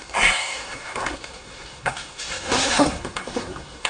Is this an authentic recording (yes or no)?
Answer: no